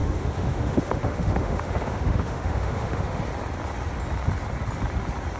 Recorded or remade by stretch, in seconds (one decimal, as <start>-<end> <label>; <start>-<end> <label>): 0.0-3.2 remade; 3.2-5.4 recorded